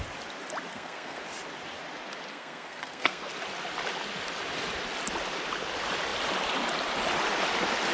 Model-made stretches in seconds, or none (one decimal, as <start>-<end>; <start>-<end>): 0.7-1.2; 2.3-3.3